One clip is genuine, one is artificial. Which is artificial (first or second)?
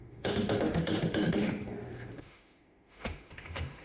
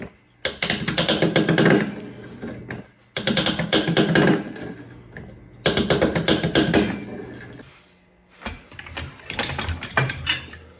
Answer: first